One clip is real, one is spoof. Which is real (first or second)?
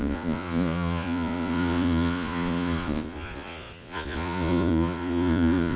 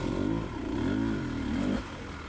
second